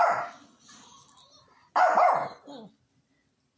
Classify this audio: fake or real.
real